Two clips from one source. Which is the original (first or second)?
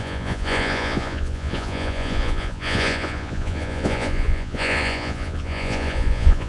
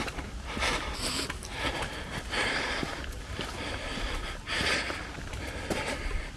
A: second